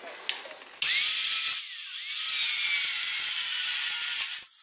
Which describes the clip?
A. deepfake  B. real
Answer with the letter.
B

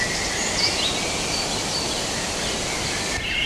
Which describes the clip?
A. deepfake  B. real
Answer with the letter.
B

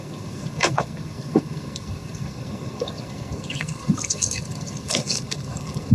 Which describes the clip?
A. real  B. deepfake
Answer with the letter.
B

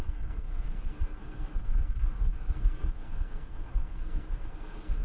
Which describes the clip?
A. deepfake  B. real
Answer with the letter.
A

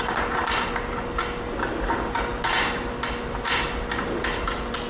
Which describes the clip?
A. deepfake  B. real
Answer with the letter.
B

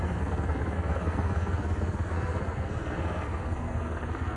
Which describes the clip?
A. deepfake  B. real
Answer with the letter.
A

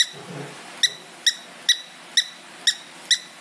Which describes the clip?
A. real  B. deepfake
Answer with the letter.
A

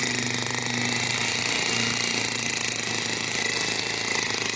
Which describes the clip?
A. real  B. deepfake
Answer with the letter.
A